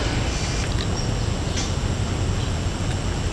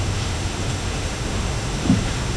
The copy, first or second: second